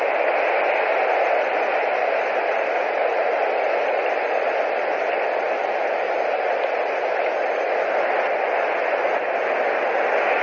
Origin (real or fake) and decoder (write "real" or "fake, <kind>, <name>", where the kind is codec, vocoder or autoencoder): real